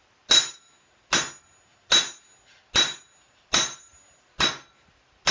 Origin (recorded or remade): recorded